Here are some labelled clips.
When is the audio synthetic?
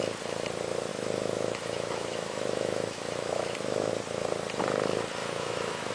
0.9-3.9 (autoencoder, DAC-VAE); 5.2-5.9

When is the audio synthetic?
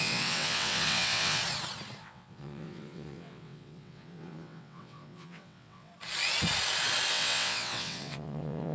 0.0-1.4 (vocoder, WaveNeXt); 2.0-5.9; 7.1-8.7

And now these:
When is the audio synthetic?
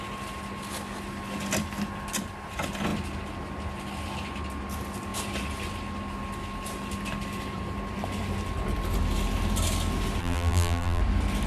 10.2-11.0 (vocoder, BigVGAN v2)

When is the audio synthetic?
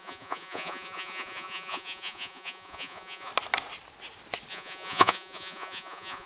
0.0-3.3 (vocoder, Vocos); 4.5-6.3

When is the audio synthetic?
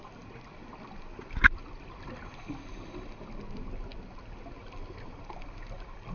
none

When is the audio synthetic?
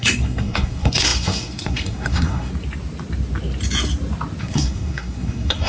0.0-2.5 (codec, SNAC); 4.4-5.7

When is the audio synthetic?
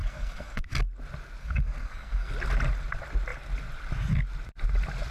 0.0-0.6 (codec, SNAC); 1.4-2.3